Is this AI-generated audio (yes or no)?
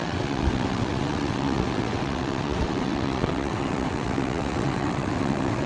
yes